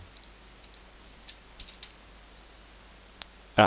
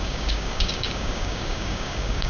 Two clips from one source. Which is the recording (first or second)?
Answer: first